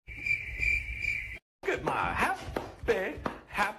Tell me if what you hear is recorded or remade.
recorded